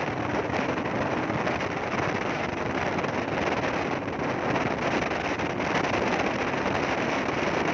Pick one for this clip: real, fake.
real